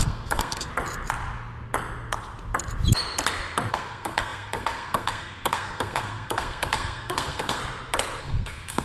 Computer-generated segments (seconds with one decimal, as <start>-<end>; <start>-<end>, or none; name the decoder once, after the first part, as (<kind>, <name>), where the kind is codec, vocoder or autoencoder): 0.0-0.7 (codec, SNAC); 3.7-7.6; 8.2-8.8